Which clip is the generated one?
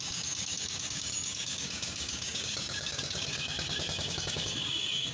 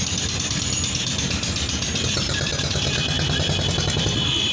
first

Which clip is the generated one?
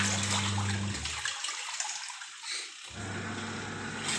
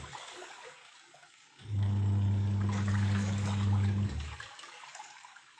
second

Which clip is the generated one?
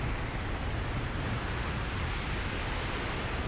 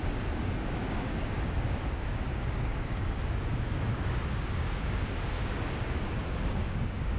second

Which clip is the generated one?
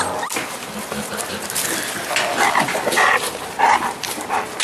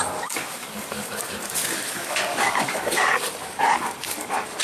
second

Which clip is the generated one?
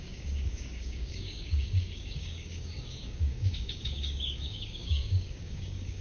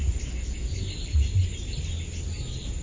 first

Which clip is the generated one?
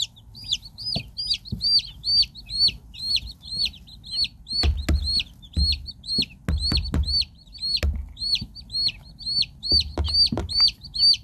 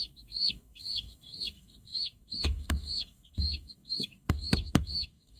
second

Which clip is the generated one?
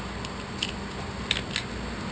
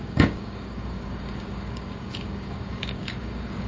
second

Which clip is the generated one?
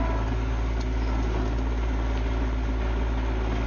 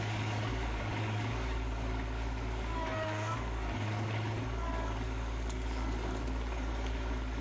second